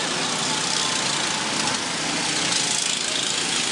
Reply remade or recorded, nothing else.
recorded